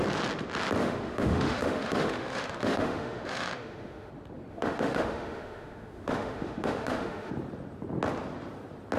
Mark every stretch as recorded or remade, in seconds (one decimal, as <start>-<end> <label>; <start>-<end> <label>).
0.0-0.8 recorded; 0.8-4.1 remade; 4.1-4.5 recorded; 4.5-7.3 remade; 7.3-9.0 recorded